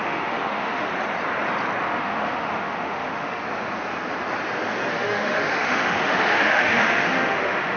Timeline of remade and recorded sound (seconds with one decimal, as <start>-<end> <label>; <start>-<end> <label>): 0.0-0.9 remade; 0.9-1.8 recorded; 1.8-3.4 remade; 3.4-4.9 recorded; 4.9-7.8 remade